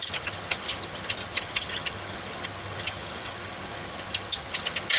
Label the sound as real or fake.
fake